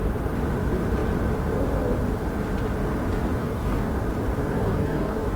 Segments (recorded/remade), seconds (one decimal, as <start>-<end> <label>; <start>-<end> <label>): 0.0-3.4 recorded; 3.4-3.9 remade; 3.9-4.4 recorded; 4.4-5.4 remade